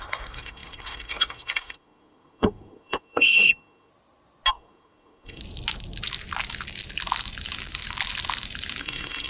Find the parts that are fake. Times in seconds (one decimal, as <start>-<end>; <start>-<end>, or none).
0.0-3.9; 4.5-5.4; 8.8-9.3